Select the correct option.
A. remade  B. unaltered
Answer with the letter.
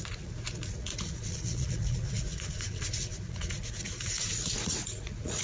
A